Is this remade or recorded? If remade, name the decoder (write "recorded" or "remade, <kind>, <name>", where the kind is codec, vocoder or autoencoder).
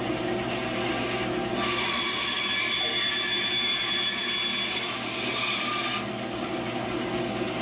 recorded